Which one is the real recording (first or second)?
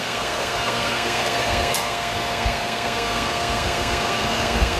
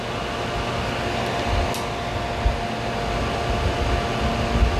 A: second